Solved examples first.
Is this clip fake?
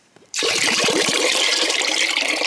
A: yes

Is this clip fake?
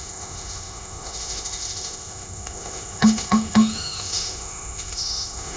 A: yes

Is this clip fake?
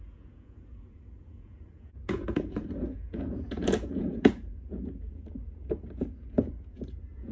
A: yes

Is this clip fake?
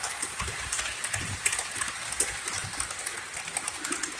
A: no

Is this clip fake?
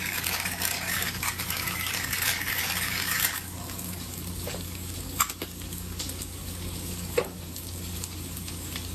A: yes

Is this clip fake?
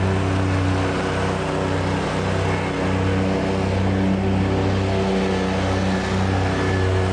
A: no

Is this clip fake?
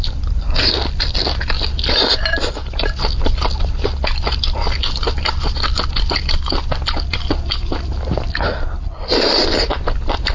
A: no